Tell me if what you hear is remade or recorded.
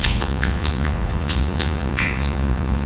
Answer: remade